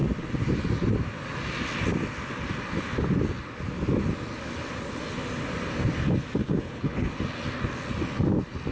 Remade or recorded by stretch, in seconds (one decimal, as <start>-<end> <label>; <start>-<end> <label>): 0.0-6.4 recorded; 6.4-7.1 remade; 7.1-8.7 recorded

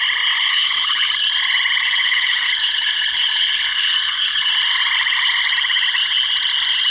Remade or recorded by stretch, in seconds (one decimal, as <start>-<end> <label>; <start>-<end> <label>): 0.0-0.4 recorded; 0.4-1.1 remade; 1.1-2.0 recorded; 2.0-4.5 remade; 4.5-6.9 recorded